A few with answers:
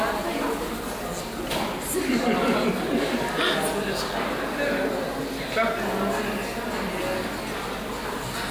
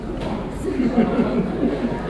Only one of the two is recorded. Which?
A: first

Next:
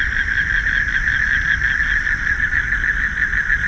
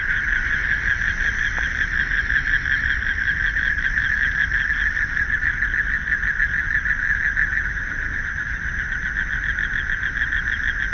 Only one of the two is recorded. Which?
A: second